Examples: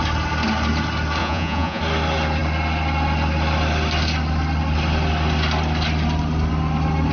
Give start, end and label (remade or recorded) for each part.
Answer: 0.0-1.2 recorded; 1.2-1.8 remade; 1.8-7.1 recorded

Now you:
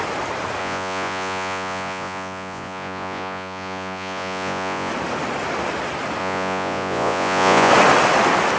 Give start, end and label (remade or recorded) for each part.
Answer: 0.0-0.6 recorded; 0.6-4.9 remade; 4.9-6.2 recorded; 6.2-7.7 remade; 7.7-8.6 recorded

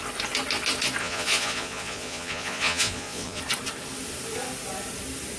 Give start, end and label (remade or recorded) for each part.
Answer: 0.0-1.0 recorded; 1.0-3.4 remade; 3.4-5.4 recorded

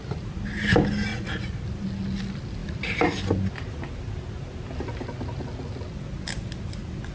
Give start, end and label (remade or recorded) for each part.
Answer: 0.0-1.1 recorded; 1.1-1.6 remade; 1.6-7.1 recorded

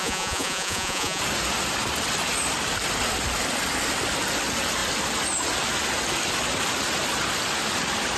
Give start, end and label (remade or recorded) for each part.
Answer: 0.0-1.2 remade; 1.2-8.2 recorded

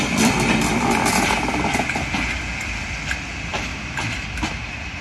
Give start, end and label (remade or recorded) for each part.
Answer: 0.0-5.0 recorded

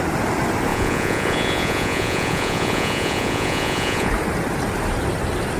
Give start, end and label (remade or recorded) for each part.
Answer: 0.0-0.7 recorded; 0.7-4.1 remade; 4.1-5.6 recorded